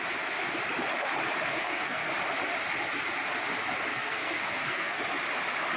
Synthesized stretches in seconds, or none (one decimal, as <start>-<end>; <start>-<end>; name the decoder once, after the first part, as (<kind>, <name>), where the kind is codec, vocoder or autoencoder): 1.5-2.1 (codec, SNAC); 3.9-5.0